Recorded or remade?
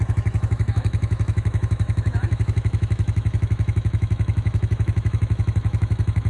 remade